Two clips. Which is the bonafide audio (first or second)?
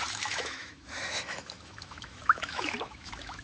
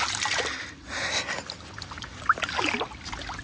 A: second